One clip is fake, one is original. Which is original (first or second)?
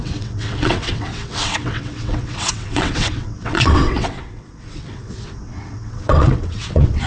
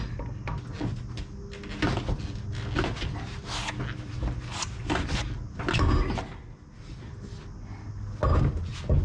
second